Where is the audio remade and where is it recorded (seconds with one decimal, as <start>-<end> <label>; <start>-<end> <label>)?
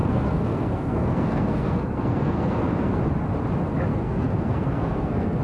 0.0-3.0 remade; 3.0-3.9 recorded; 3.9-5.4 remade